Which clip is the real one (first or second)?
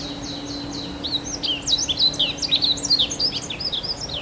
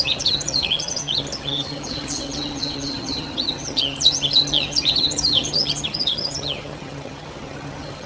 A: first